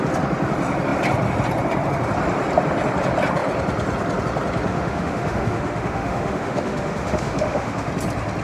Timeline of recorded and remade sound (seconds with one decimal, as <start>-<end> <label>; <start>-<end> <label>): 0.0-4.7 recorded; 4.7-7.9 remade; 7.9-8.4 recorded